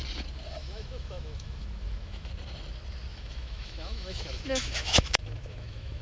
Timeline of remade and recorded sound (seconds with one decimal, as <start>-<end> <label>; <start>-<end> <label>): 0.0-0.6 recorded; 0.6-2.3 remade; 2.3-3.1 recorded; 3.1-6.0 remade